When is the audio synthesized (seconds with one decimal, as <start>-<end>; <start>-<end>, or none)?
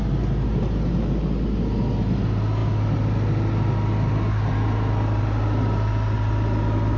none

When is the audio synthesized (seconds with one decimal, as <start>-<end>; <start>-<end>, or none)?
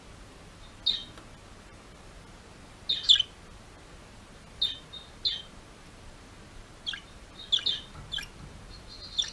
none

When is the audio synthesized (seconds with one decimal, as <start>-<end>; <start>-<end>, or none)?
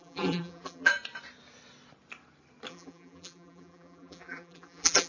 0.0-0.9; 2.7-5.1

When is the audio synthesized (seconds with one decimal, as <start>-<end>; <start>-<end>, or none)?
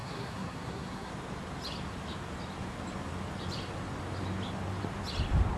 0.0-1.1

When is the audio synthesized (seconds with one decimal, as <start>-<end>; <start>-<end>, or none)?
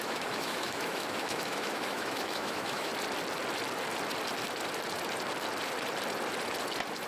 0.0-2.9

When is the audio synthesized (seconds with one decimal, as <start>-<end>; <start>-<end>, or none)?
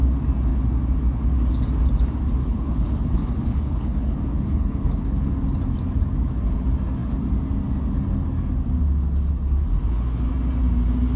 2.4-5.3; 9.8-10.3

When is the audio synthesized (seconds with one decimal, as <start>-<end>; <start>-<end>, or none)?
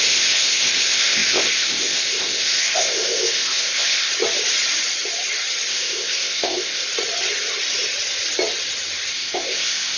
0.0-4.1; 5.7-6.8; 9.1-10.0